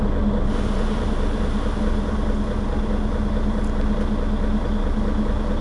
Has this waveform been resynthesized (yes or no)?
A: no